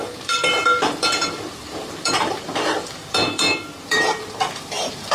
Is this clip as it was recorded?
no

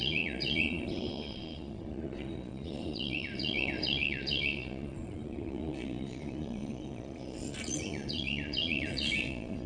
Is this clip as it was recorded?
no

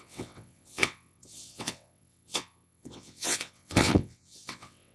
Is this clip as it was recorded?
no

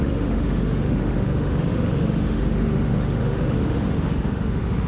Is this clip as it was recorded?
no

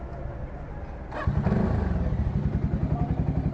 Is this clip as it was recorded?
yes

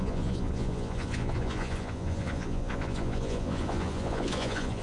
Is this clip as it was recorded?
no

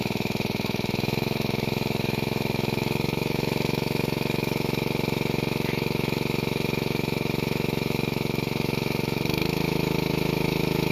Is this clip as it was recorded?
no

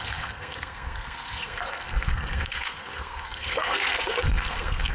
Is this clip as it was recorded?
no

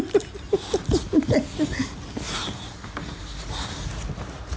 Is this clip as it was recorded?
yes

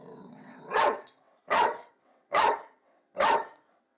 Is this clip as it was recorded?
no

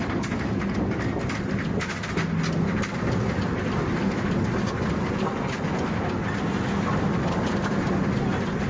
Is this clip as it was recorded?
yes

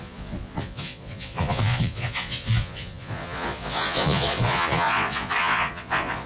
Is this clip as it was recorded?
no